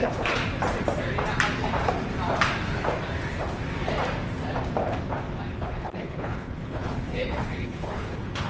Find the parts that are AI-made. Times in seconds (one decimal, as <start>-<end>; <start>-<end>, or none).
0.0-0.4; 5.5-8.5